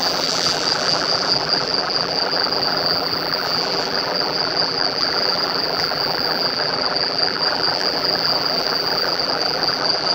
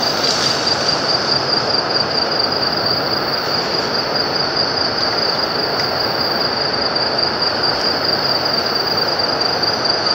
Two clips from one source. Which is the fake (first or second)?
first